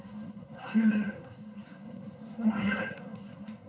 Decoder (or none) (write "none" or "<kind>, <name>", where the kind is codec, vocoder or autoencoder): codec, SNAC